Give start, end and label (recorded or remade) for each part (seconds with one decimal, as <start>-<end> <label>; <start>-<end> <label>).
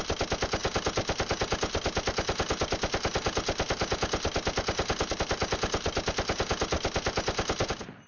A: 0.0-8.1 recorded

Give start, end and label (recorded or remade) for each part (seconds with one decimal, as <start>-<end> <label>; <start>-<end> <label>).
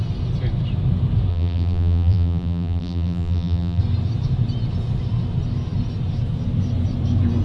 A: 0.0-1.3 recorded; 1.3-3.8 remade; 3.8-7.4 recorded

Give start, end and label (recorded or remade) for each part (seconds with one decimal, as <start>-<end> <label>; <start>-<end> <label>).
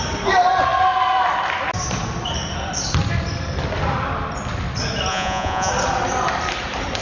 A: 0.0-5.1 recorded; 5.1-5.7 remade; 5.7-7.0 recorded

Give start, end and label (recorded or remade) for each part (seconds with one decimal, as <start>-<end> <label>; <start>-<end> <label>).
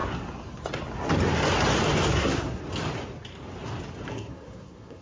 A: 0.0-2.1 recorded; 2.1-2.6 remade; 2.6-4.1 recorded; 4.1-5.0 remade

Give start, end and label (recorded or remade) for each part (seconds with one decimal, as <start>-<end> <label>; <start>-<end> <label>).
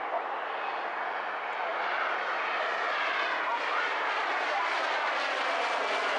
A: 0.0-6.2 recorded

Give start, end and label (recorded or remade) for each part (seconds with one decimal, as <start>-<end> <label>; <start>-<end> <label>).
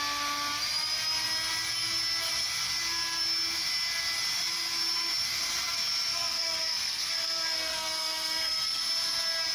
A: 0.0-6.1 recorded; 6.1-8.8 remade; 8.8-9.5 recorded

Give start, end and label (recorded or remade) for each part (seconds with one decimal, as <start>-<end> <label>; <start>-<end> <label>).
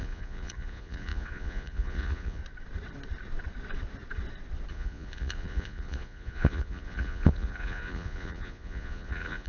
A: 0.0-2.4 remade; 2.4-4.7 recorded; 4.7-9.5 remade